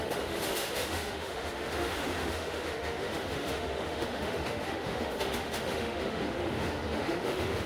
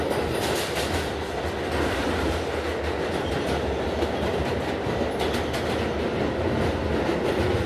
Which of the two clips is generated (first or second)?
first